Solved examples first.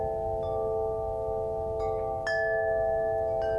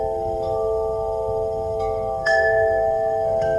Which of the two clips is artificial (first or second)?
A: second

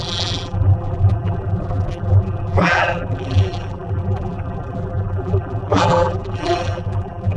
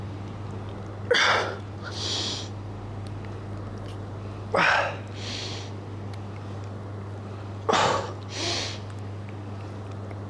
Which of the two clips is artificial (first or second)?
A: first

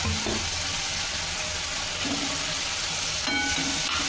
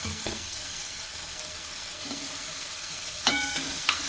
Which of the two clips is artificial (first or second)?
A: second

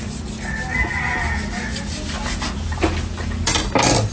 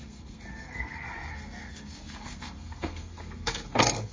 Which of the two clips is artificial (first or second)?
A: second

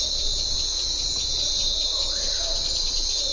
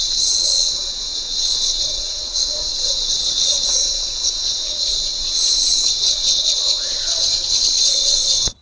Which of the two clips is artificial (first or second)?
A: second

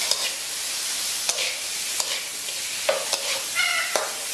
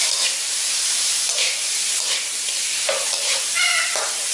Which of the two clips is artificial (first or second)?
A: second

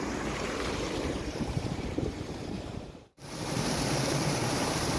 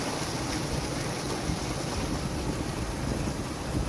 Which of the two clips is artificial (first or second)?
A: first